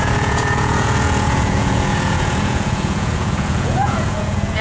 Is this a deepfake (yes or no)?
yes